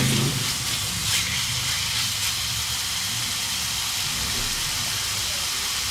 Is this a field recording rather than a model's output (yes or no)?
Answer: no